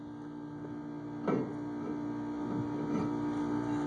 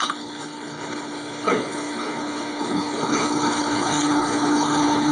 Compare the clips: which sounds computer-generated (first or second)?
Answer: second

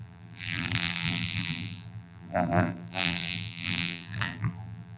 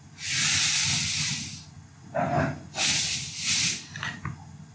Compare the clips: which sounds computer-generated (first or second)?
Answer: first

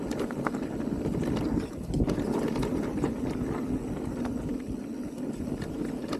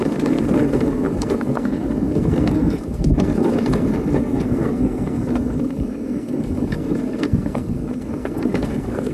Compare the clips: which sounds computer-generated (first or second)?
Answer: second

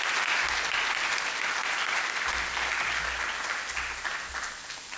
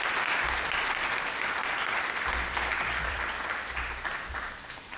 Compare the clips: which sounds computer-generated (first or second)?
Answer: second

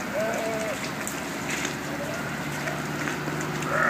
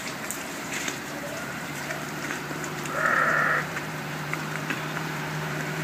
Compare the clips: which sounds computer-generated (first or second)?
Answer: second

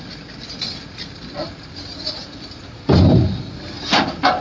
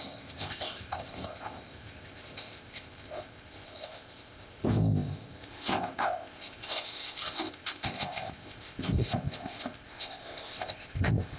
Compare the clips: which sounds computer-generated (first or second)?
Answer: second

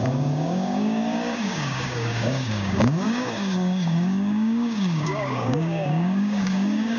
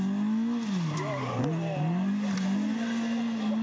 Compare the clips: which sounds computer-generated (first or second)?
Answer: first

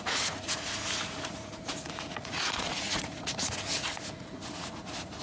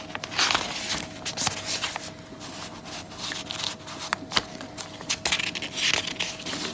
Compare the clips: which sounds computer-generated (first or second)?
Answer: first